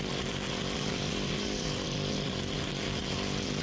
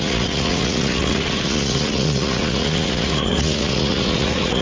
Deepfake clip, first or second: second